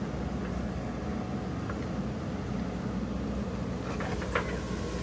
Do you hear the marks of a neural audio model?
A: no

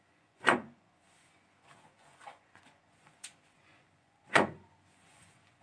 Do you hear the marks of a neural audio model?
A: yes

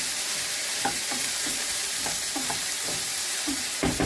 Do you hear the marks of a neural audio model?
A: yes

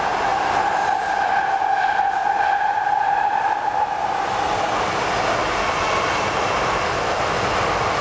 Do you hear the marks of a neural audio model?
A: no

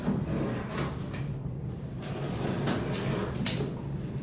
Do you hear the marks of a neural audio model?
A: no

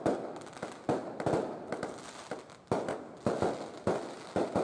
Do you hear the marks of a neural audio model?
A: no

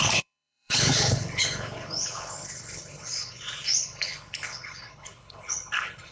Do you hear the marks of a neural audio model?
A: yes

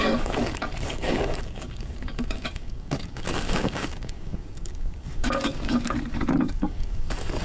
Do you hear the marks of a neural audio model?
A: yes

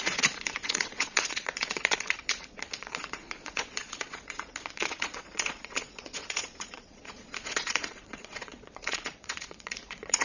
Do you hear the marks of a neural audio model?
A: yes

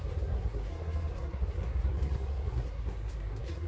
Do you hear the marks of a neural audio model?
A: yes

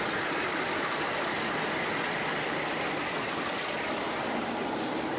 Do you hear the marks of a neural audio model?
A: yes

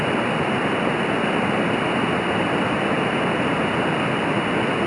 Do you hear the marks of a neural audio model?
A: no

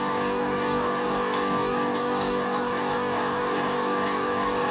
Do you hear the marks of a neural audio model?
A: yes